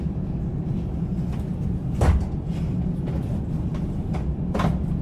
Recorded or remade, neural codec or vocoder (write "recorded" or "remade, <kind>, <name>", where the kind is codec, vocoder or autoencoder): recorded